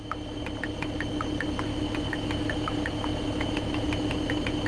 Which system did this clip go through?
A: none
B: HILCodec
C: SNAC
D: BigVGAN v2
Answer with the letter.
A